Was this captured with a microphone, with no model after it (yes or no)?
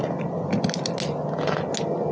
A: yes